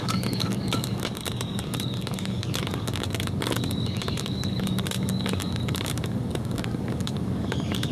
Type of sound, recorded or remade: remade